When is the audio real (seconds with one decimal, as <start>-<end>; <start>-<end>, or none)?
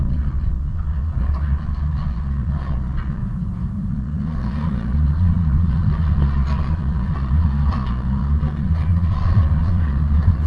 3.2-3.9